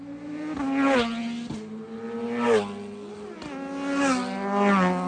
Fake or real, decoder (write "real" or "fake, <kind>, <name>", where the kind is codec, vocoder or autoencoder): real